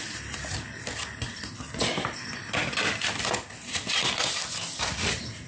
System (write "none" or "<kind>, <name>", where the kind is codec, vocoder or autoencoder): none